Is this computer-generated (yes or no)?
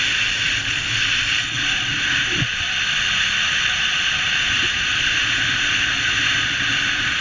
no